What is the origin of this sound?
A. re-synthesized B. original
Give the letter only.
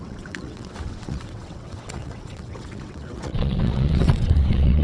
A